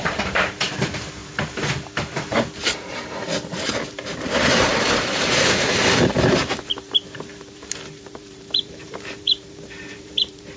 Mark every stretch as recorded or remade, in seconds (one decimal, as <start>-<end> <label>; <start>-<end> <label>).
0.0-10.6 remade